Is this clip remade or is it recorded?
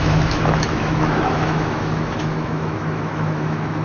remade